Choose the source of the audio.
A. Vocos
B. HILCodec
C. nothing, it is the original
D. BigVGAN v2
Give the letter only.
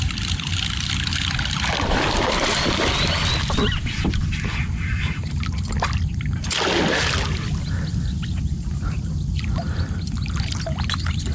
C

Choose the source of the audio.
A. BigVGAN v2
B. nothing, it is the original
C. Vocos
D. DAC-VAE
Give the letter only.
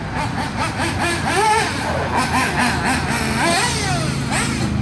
B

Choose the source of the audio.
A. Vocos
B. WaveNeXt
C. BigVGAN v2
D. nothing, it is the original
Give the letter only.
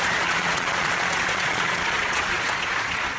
A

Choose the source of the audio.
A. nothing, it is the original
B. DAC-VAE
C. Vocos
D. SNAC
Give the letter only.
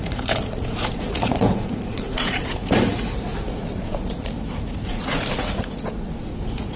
C